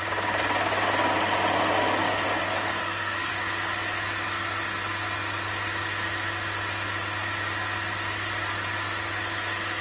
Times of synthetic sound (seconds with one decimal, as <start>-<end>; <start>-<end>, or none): 2.8-3.3